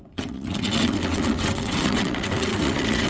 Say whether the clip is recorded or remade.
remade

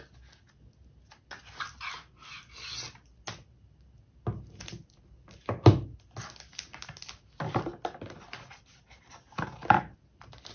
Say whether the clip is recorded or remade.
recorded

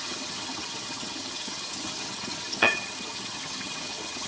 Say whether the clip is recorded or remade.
remade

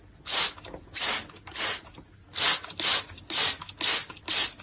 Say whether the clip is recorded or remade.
recorded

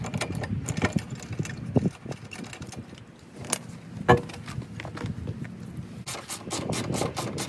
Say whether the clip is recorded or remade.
recorded